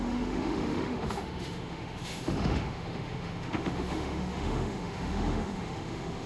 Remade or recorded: remade